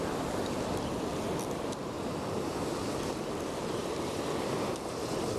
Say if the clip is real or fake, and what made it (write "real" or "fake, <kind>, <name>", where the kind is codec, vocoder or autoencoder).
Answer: real